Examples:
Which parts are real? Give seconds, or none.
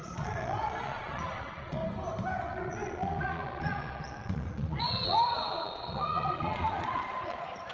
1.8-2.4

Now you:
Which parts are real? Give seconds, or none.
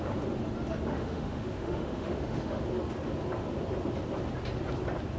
0.0-0.9; 2.6-5.2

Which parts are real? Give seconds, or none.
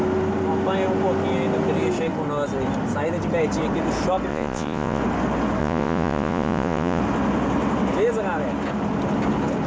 0.0-4.3; 5.0-5.6; 7.0-9.7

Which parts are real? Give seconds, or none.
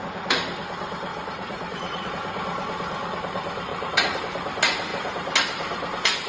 0.0-1.1; 2.1-3.7; 4.2-6.3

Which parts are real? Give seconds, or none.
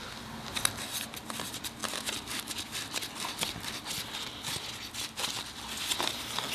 0.0-6.5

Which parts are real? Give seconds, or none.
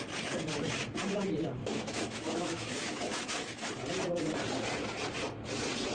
0.0-1.6; 3.7-5.9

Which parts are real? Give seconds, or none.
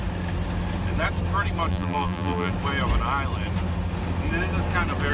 0.0-1.7; 2.5-5.1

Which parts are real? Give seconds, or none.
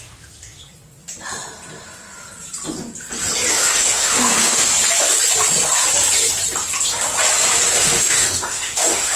0.6-3.5; 4.7-7.8